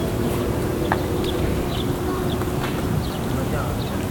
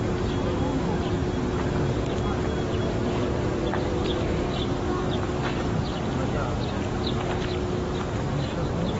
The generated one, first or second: first